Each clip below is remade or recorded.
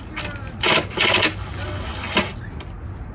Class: recorded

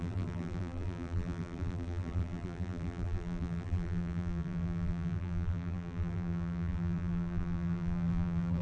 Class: remade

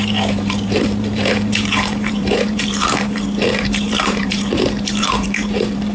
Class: remade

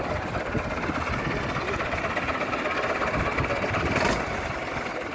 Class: recorded